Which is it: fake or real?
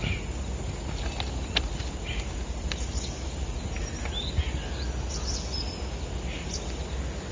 real